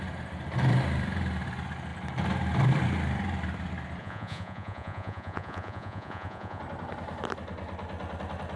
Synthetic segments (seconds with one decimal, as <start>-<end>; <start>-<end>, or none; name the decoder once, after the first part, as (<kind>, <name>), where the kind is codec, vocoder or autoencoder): 4.0-6.6 (vocoder, Vocos)